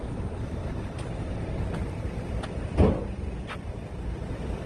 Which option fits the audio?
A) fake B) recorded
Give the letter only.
B